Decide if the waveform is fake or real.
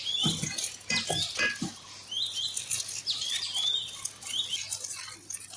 real